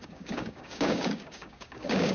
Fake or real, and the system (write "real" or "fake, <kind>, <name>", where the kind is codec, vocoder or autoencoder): fake, codec, DAC